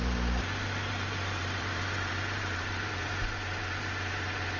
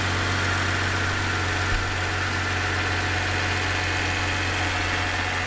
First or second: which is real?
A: second